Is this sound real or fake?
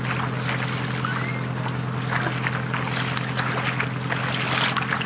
real